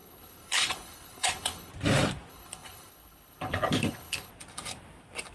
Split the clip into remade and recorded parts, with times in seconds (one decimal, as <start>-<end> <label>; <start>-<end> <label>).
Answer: 0.0-1.7 remade; 1.7-2.3 recorded; 2.3-4.3 remade; 4.3-5.3 recorded

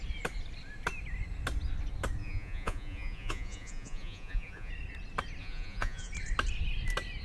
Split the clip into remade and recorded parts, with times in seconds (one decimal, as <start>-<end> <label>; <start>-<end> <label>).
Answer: 0.0-2.2 recorded; 2.2-4.7 remade; 4.7-5.4 recorded; 5.4-6.1 remade; 6.1-7.2 recorded